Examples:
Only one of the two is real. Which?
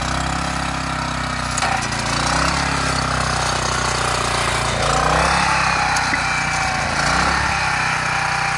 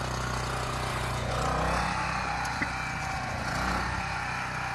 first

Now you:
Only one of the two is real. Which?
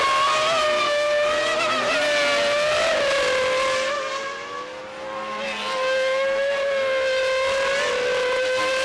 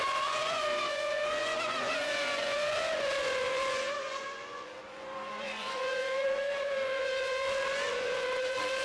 first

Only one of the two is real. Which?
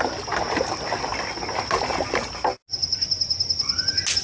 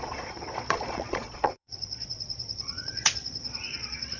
first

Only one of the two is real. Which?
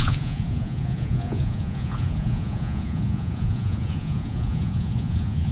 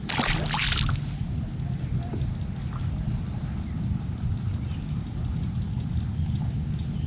second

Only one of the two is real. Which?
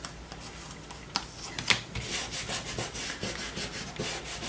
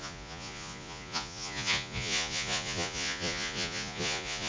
first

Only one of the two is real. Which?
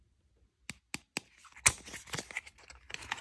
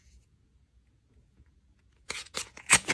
first